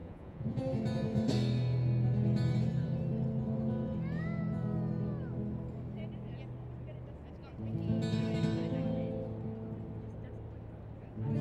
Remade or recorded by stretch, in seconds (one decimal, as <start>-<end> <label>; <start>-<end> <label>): 0.0-0.6 remade; 0.6-11.4 recorded